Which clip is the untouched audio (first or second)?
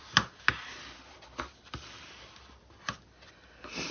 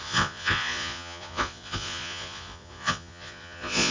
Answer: first